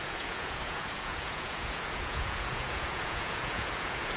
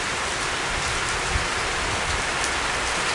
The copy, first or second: first